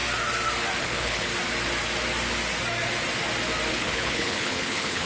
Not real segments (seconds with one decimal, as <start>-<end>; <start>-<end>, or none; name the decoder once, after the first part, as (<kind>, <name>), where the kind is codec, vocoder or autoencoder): 0.8-1.3 (codec, HILCodec); 3.7-5.1